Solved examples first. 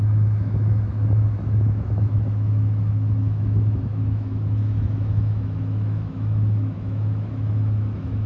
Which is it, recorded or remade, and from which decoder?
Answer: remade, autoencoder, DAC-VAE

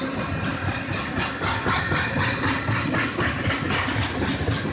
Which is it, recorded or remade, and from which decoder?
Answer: recorded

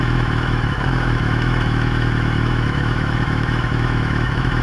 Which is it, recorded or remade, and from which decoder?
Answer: remade, autoencoder, DAC-VAE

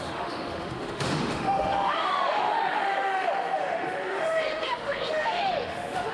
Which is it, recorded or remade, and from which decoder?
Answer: remade, autoencoder, DAC-VAE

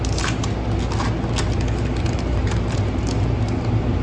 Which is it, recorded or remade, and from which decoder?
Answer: recorded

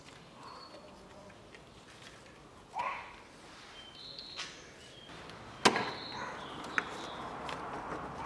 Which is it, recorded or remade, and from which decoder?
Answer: recorded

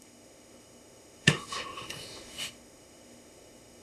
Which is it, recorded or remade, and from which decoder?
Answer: remade, autoencoder, DAC-VAE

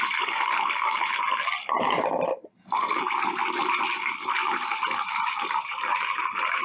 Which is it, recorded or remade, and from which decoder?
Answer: recorded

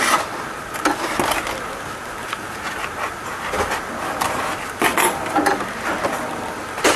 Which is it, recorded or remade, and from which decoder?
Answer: recorded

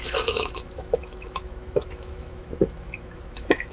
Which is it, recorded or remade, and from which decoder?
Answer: remade, autoencoder, DAC-VAE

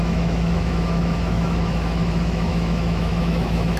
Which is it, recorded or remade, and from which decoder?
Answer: remade, autoencoder, DAC-VAE